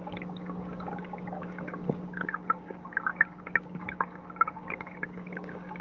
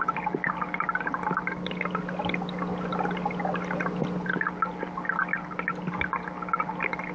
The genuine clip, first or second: second